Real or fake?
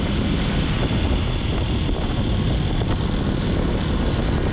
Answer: real